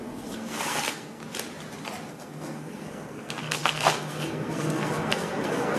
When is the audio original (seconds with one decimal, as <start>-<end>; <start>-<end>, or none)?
1.2-2.1